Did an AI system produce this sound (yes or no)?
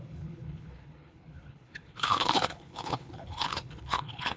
yes